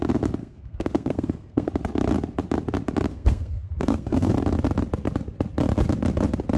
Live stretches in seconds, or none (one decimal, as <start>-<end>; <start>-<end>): 0.0-0.4; 1.7-3.1; 4.3-6.6